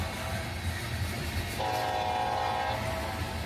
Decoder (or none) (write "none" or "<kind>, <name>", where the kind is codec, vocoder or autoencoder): none